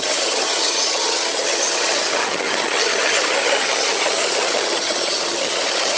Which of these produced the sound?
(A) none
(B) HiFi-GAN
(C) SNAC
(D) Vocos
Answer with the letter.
B